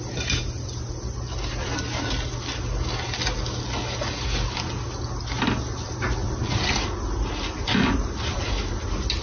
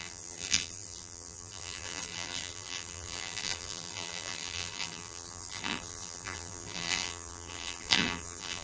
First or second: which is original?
first